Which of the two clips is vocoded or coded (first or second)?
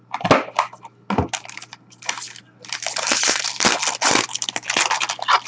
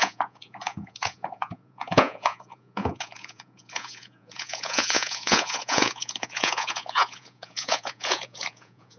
second